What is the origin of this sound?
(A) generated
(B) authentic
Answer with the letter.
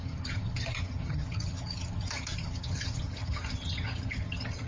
A